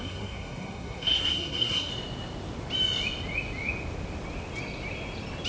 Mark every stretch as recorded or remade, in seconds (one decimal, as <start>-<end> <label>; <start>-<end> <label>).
0.0-1.9 remade; 1.9-5.5 recorded